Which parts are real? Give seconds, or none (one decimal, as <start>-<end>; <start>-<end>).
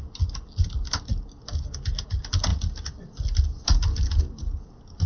0.0-5.1